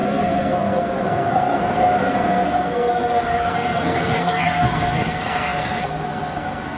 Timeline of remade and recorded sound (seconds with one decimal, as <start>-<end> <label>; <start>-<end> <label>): 0.0-6.8 remade